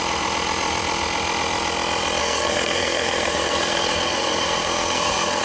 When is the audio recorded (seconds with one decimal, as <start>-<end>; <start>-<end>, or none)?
0.0-2.2